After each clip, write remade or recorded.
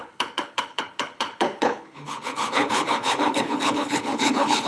remade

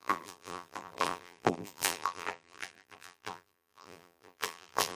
remade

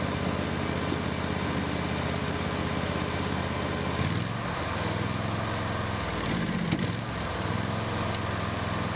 recorded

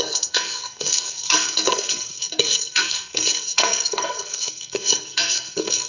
remade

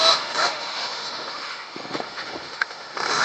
remade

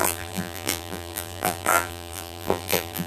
remade